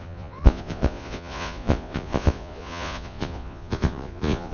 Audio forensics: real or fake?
fake